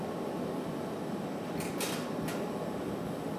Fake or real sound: real